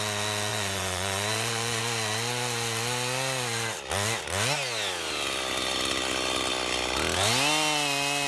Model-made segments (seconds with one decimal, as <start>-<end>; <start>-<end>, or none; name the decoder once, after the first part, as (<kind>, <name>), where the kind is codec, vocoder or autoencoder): 0.5-1.8 (vocoder, Vocos)